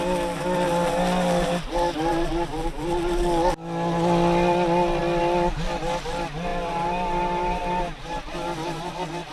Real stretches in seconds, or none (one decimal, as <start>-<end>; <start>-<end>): 0.0-6.5; 8.9-9.3